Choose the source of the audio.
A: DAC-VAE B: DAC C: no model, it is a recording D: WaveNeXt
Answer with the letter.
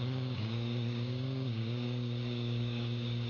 B